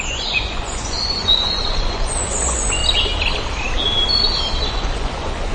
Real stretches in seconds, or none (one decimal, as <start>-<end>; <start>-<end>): 2.8-4.6